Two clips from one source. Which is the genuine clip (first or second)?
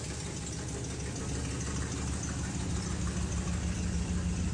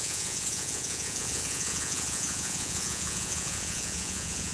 first